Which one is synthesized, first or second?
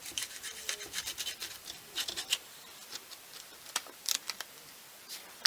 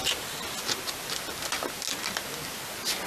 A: first